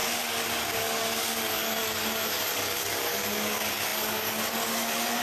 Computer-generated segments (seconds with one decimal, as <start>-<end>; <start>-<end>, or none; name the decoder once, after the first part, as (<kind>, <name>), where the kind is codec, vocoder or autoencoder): 0.0-5.2 (codec, DAC)